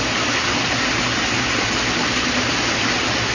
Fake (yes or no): no